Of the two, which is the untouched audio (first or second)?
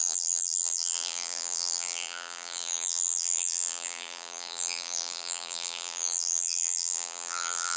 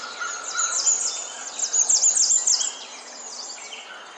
second